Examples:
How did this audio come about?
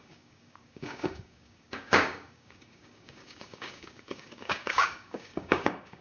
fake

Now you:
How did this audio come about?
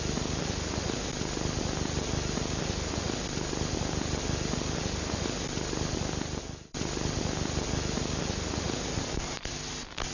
real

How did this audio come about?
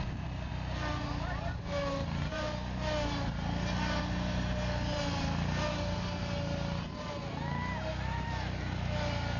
real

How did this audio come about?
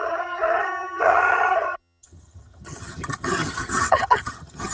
fake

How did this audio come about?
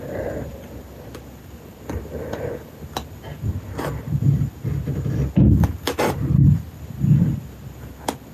real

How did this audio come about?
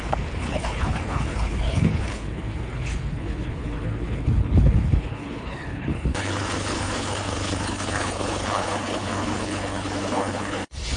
fake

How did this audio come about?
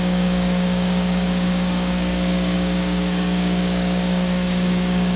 fake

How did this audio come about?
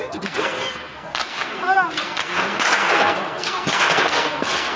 fake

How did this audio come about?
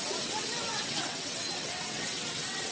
fake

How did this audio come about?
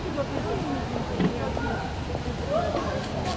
real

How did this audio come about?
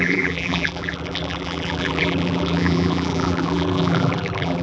fake